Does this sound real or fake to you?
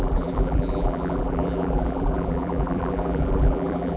fake